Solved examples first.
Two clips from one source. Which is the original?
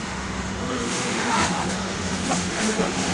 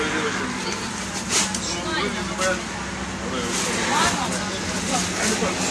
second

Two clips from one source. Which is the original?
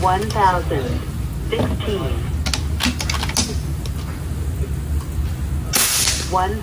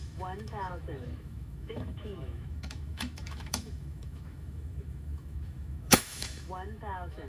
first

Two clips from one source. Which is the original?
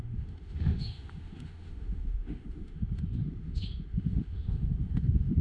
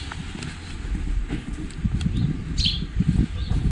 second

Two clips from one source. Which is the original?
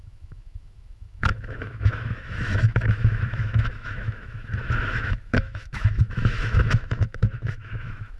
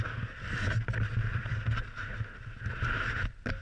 second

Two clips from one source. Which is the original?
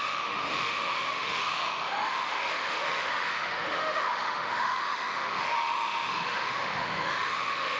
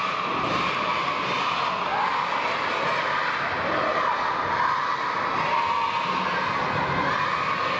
second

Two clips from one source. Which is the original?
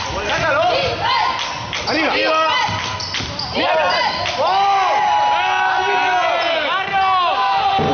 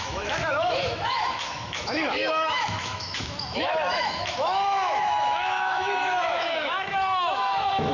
first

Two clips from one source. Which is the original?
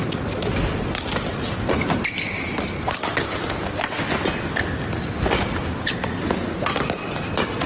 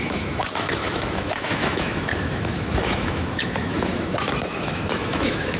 first